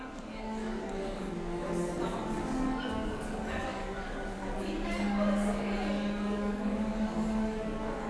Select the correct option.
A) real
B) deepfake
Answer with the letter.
B